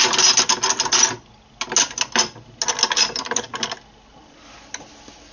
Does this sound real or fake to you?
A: real